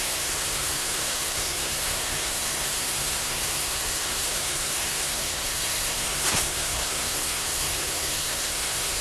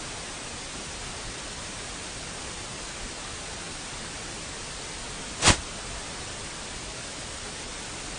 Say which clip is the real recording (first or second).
second